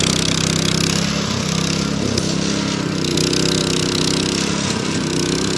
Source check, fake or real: real